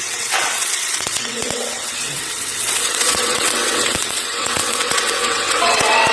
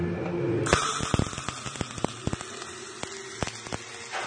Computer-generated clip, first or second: first